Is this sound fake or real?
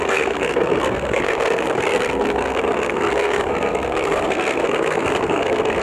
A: fake